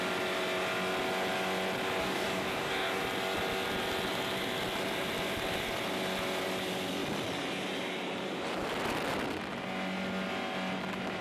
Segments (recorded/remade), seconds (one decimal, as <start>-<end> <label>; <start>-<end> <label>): 0.0-2.0 recorded; 2.0-3.0 remade; 3.0-11.2 recorded